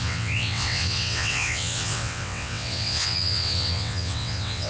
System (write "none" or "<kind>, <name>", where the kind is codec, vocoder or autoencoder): vocoder, WaveNeXt